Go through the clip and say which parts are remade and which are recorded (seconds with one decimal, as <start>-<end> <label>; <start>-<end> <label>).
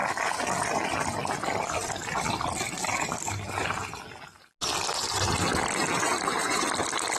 0.0-5.0 recorded; 5.0-6.7 remade; 6.7-7.2 recorded